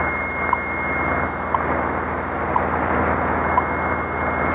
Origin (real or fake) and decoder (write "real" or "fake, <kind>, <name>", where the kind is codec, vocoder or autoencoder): real